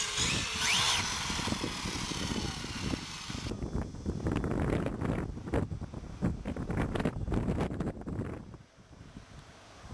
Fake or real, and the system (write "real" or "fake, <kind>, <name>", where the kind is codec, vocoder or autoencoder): real